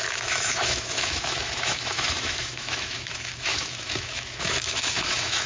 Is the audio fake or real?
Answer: fake